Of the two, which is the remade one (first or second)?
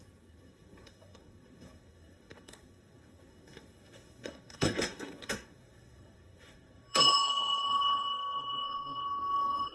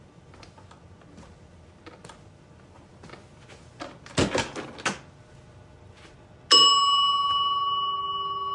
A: first